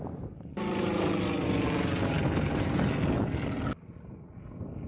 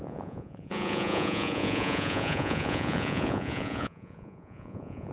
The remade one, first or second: second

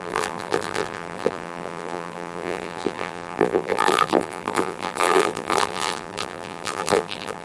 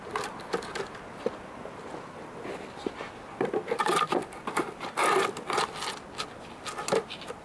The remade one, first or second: first